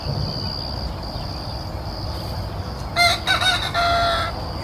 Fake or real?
real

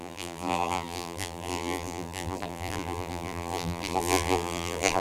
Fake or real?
fake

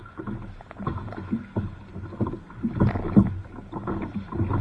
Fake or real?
real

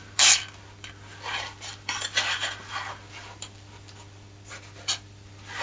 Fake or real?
real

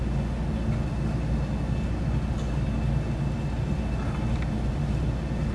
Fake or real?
real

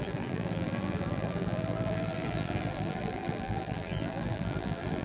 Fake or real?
fake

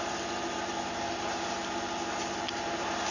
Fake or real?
real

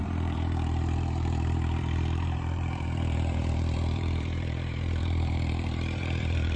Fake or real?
fake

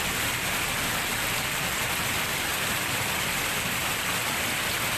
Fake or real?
real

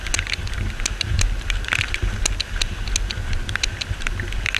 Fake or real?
real